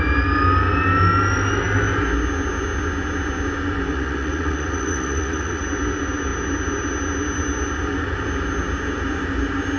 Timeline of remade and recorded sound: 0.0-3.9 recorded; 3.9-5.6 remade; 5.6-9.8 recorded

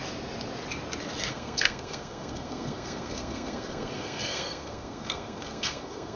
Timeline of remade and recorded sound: 0.0-1.3 recorded; 1.3-6.2 remade

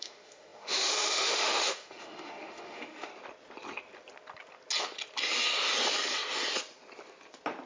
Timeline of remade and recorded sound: 0.0-3.1 remade; 3.1-7.7 recorded

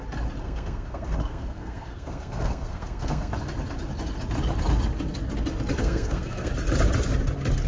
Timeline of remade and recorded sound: 0.0-0.4 recorded; 0.4-3.3 remade; 3.3-5.8 recorded; 5.8-6.5 remade; 6.5-7.7 recorded